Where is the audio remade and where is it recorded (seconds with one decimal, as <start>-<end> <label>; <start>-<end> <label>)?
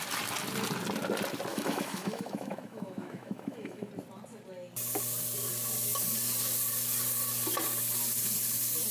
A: 0.0-1.5 recorded; 1.5-3.9 remade; 3.9-8.9 recorded